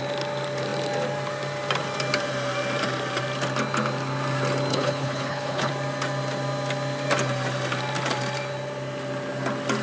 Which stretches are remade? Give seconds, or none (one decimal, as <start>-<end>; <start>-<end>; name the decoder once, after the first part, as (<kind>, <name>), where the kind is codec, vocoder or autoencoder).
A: 4.7-5.7 (codec, HILCodec)